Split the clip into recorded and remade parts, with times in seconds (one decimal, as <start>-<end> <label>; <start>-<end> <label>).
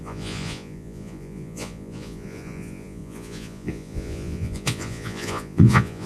0.0-6.1 remade